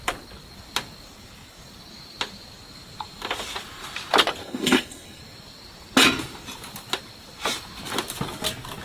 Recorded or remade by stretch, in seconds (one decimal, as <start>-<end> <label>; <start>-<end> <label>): 0.0-4.4 recorded; 4.4-5.2 remade; 5.2-8.8 recorded